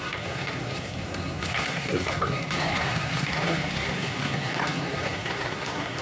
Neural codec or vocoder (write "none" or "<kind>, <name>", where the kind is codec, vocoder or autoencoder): codec, SNAC